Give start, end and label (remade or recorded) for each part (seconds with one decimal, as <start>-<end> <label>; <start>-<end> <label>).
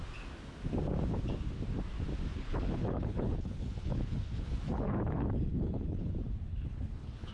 0.0-2.3 recorded; 2.3-6.1 remade; 6.1-6.5 recorded; 6.5-7.3 remade